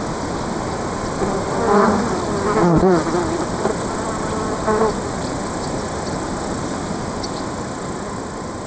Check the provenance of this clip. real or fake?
real